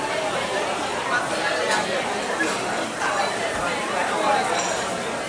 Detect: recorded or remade recorded